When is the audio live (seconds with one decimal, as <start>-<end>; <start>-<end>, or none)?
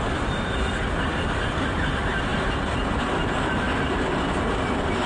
0.0-5.1